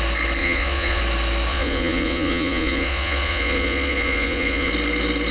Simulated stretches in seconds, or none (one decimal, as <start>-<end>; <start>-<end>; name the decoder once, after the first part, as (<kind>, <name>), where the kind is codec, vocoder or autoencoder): 0.4-1.0 (vocoder, Vocos); 1.5-4.7